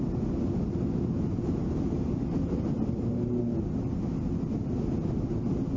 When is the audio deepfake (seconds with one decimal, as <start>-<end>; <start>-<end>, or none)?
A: none